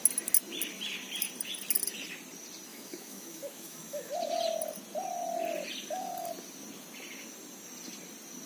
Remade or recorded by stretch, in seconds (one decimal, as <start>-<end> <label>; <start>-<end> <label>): 0.0-2.7 recorded; 2.7-4.1 remade; 4.1-8.5 recorded